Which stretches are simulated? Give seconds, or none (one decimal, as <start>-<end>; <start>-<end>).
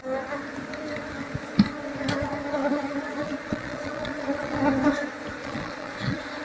2.6-4.6; 5.4-6.4